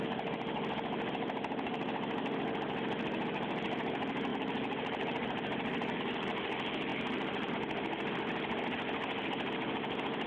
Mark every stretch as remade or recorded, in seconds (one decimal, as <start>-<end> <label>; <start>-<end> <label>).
0.0-4.3 recorded; 4.3-6.0 remade; 6.0-6.9 recorded; 6.9-7.5 remade; 7.5-10.3 recorded